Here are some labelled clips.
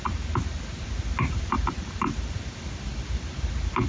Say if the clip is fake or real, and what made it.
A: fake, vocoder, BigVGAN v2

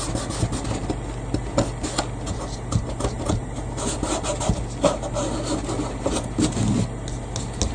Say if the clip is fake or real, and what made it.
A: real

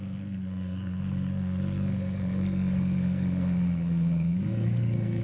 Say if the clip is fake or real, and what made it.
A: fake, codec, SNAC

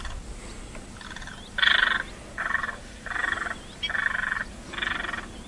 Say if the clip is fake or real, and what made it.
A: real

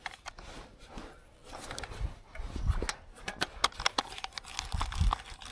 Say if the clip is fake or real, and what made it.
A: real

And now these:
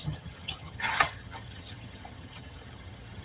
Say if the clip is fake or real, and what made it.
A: fake, vocoder, HiFi-GAN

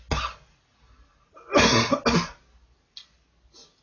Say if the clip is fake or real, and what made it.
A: real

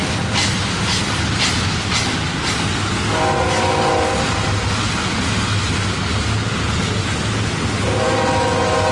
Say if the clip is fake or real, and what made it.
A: real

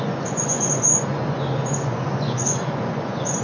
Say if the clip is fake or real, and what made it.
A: fake, vocoder, Vocos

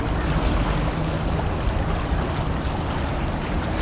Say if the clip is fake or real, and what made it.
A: real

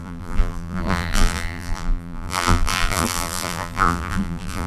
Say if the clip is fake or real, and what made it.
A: fake, vocoder, BigVGAN v2